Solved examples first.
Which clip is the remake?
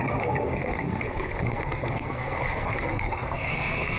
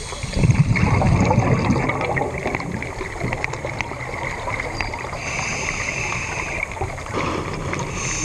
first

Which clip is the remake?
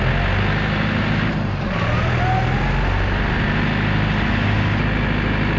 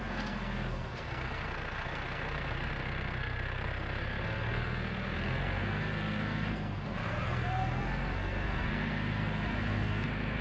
second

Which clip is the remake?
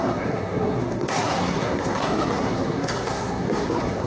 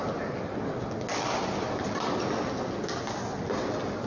first